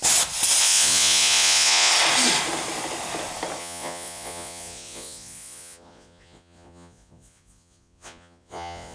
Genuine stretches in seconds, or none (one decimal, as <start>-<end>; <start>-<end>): 0.0-0.6; 1.9-3.6